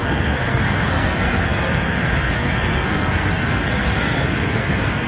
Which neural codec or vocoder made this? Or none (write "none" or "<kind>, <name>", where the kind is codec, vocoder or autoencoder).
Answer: codec, SNAC